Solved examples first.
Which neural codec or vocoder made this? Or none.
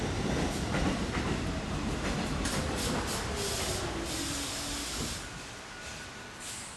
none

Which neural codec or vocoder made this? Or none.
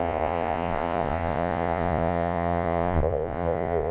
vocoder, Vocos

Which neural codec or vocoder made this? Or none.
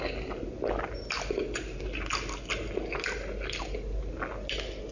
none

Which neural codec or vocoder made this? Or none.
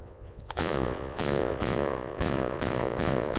vocoder, Vocos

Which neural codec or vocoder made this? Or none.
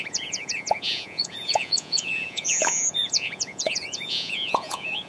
vocoder, Vocos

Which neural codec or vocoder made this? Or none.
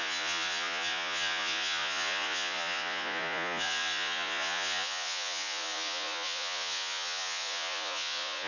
vocoder, Vocos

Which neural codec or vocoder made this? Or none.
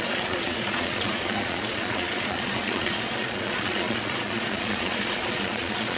vocoder, Vocos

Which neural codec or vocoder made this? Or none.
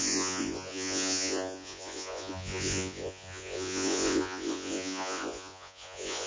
vocoder, Vocos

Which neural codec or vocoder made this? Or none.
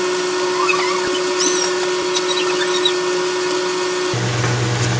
none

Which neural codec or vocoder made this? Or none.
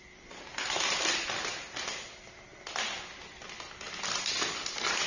none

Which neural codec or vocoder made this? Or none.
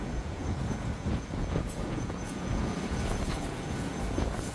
vocoder, Vocos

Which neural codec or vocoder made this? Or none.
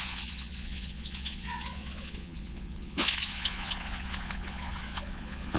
vocoder, Vocos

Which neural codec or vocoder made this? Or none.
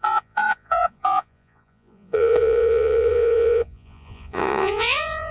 vocoder, Vocos